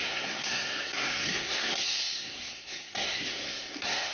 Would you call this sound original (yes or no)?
no